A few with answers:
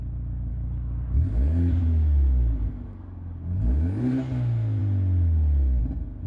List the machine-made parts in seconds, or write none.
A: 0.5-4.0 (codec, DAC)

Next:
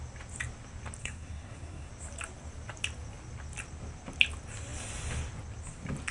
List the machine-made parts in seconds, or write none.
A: 1.0-1.9 (codec, SNAC)

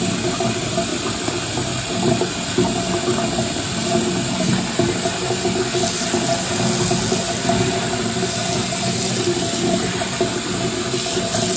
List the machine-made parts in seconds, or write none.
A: none